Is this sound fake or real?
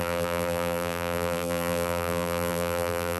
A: fake